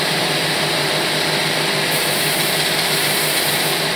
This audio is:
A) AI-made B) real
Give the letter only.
A